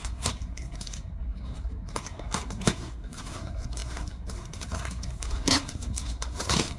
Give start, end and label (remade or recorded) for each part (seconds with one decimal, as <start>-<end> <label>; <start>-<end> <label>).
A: 0.0-6.8 remade